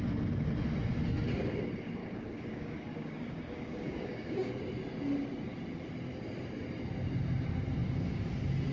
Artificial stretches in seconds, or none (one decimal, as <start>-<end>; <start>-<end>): 2.0-4.5